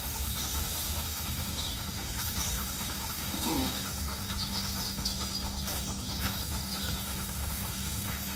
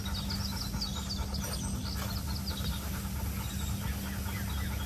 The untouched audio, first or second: second